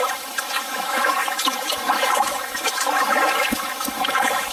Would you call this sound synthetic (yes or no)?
yes